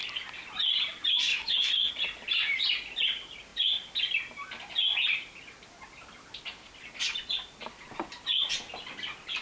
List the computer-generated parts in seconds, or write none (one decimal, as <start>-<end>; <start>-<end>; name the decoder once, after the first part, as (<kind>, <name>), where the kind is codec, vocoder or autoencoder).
1.3-1.9 (autoencoder, DAC-VAE)